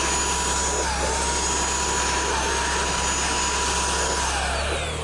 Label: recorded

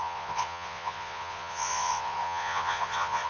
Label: remade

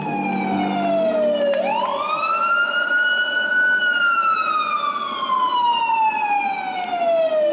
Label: recorded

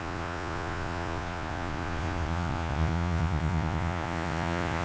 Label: remade